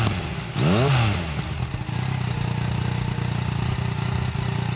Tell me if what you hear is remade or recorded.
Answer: recorded